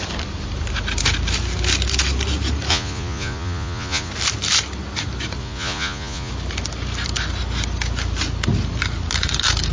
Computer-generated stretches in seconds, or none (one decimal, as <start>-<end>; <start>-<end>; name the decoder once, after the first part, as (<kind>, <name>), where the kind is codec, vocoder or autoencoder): 2.7-4.1 (vocoder, Vocos); 5.4-6.3